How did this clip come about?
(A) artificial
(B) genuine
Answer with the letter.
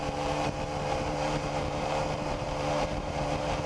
A